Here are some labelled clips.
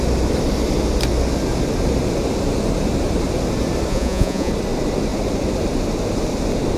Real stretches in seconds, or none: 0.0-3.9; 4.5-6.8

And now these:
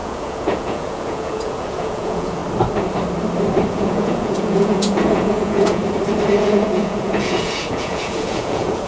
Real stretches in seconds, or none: 2.4-3.7; 5.8-6.4

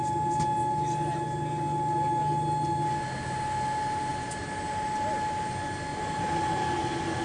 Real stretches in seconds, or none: 0.0-7.2

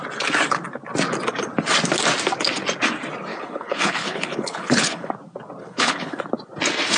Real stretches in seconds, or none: 0.0-3.3; 5.1-5.6; 6.2-7.0